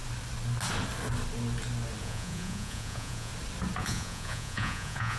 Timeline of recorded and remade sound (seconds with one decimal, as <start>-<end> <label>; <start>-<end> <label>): 0.0-2.0 recorded; 2.0-3.3 remade; 3.3-3.8 recorded; 3.8-5.2 remade